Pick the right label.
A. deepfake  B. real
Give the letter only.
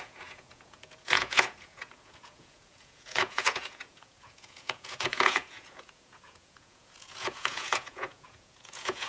A